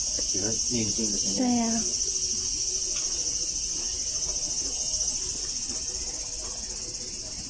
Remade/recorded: recorded